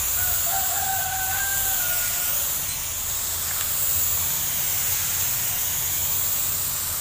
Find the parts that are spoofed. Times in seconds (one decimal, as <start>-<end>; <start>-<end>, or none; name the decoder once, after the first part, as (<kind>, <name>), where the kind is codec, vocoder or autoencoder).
none